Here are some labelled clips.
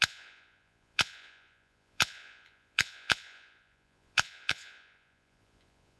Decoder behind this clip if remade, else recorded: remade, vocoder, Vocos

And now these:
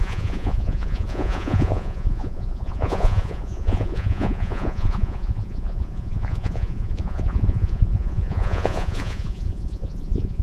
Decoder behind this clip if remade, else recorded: remade, vocoder, Vocos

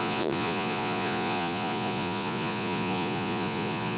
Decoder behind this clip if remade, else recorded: remade, vocoder, Vocos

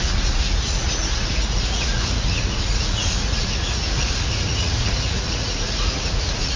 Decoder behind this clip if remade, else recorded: remade, vocoder, Vocos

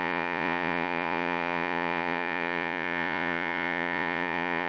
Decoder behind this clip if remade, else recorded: remade, vocoder, Vocos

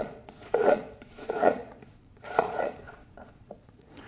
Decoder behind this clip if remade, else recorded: remade, vocoder, Vocos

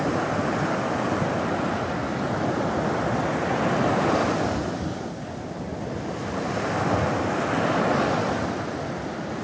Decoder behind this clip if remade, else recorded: recorded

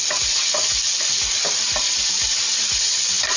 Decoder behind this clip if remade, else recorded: recorded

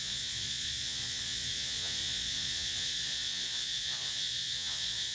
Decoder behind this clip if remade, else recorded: remade, vocoder, Vocos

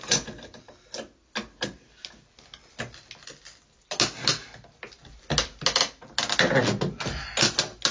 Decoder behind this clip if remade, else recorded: recorded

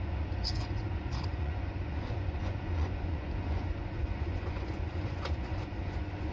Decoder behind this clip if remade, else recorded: remade, vocoder, Vocos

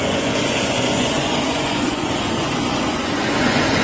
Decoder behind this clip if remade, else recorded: remade, vocoder, Vocos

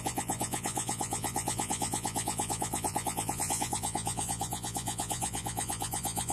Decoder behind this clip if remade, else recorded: remade, vocoder, Vocos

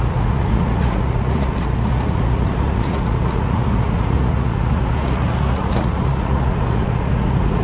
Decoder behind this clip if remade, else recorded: remade, vocoder, Vocos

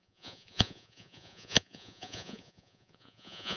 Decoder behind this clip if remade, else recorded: remade, vocoder, Vocos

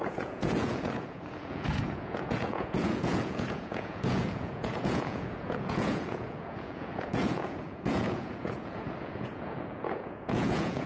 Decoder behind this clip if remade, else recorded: remade, vocoder, Vocos